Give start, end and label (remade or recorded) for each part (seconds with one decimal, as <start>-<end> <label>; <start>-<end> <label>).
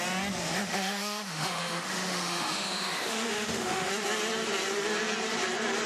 0.0-0.4 recorded; 0.4-3.9 remade; 3.9-5.9 recorded